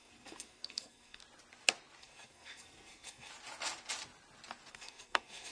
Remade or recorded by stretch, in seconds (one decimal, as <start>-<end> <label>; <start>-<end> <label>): 0.0-1.2 remade; 1.2-2.0 recorded; 2.0-3.3 remade; 3.3-4.7 recorded; 4.7-5.5 remade